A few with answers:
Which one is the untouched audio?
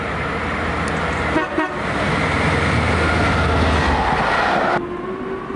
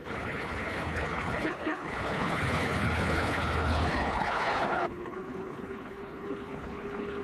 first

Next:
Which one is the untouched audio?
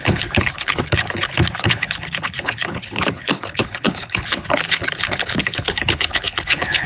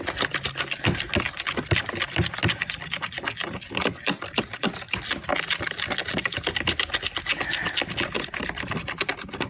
second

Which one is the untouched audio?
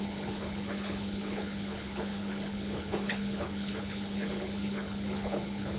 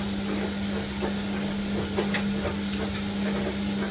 second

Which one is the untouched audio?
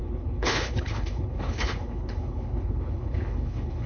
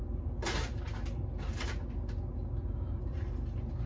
second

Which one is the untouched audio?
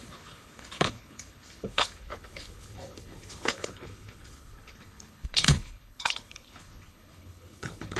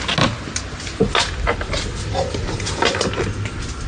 second